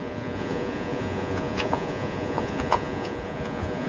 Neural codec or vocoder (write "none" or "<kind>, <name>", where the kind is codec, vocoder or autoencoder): vocoder, Vocos